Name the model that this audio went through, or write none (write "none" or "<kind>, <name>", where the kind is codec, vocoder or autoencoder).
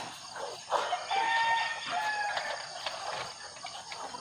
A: none